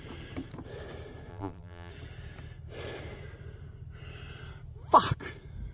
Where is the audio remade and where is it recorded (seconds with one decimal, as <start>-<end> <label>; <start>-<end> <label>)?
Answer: 0.0-1.3 recorded; 1.3-1.9 remade; 1.9-5.7 recorded